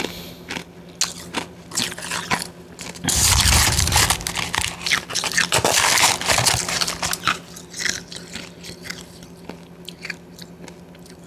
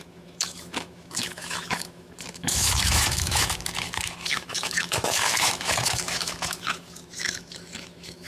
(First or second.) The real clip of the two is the first